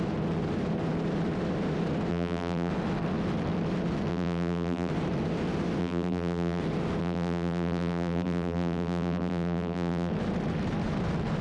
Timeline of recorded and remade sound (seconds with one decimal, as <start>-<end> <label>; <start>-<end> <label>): 0.0-2.1 recorded; 2.1-2.7 remade; 2.7-4.1 recorded; 4.1-4.9 remade; 4.9-5.8 recorded; 5.8-6.6 remade; 6.6-7.0 recorded; 7.0-10.1 remade; 10.1-11.4 recorded